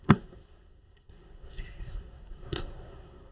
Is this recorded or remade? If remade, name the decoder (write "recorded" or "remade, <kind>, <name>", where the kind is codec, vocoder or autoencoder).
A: remade, codec, SNAC